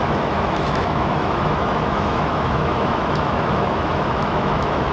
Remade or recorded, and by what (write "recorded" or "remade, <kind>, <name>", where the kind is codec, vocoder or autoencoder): remade, autoencoder, DAC-VAE